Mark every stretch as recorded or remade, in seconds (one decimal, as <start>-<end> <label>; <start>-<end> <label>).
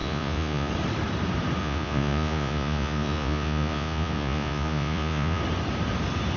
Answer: 0.0-0.7 remade; 0.7-1.6 recorded; 1.6-5.4 remade; 5.4-6.4 recorded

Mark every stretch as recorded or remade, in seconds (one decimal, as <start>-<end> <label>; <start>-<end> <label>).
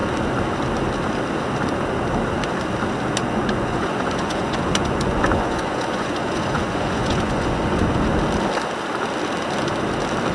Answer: 0.0-3.2 recorded; 3.2-8.1 remade; 8.1-10.3 recorded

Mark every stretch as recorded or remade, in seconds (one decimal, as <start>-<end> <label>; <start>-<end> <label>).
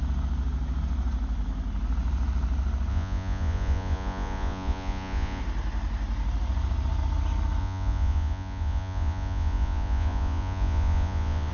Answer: 0.0-2.9 recorded; 2.9-5.4 remade; 5.4-7.6 recorded; 7.6-11.5 remade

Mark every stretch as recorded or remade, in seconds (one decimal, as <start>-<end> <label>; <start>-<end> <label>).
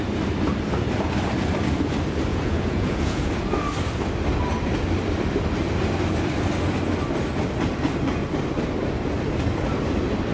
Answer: 0.0-2.3 recorded; 2.3-3.3 remade; 3.3-10.3 recorded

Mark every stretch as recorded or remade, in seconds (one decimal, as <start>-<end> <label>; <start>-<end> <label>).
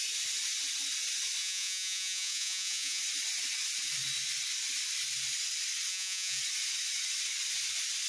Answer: 0.0-1.4 recorded; 1.4-3.0 remade; 3.0-5.9 recorded; 5.9-6.4 remade; 6.4-8.1 recorded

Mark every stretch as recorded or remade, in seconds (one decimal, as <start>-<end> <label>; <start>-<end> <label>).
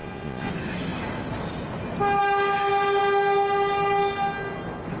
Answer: 0.0-0.5 remade; 0.5-5.0 recorded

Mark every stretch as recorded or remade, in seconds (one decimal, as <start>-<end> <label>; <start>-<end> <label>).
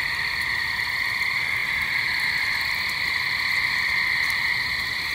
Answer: 0.0-5.1 recorded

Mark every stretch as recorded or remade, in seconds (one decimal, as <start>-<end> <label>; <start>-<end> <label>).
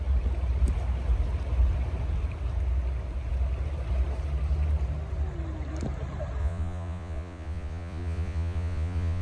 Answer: 0.0-6.4 recorded; 6.4-9.2 remade